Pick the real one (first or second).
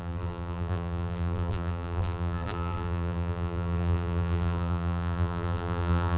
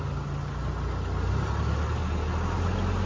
second